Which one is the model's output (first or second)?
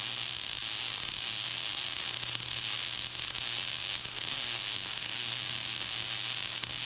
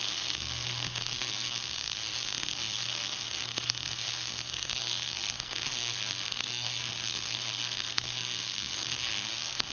second